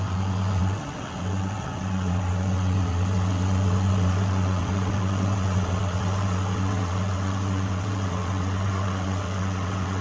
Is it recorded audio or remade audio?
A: remade